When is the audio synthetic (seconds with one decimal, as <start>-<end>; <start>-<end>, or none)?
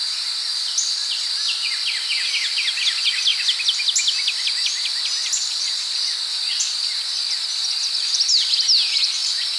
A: none